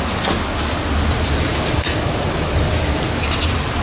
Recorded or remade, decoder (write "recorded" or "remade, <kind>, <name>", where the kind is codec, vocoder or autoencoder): recorded